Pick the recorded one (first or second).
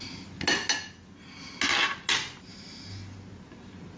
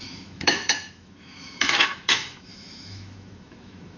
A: first